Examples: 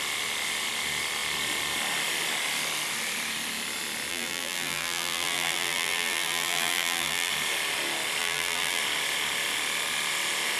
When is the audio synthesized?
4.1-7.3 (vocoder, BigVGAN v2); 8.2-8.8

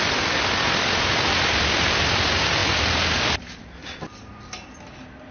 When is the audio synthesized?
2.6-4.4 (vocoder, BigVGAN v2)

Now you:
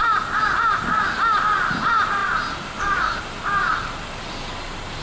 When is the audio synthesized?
2.2-3.2 (vocoder, BigVGAN v2)

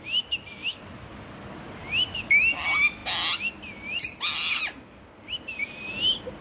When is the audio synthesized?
none

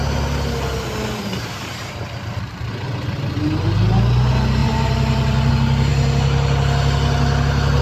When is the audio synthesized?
1.2-2.7 (vocoder, BigVGAN v2); 4.6-5.5

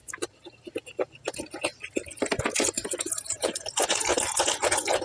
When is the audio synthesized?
none

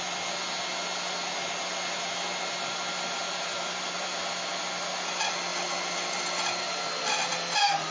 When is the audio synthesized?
3.5-4.1 (vocoder, BigVGAN v2); 5.5-7.3

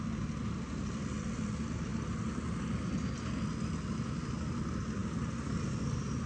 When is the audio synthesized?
0.0-1.9 (vocoder, BigVGAN v2); 3.7-6.3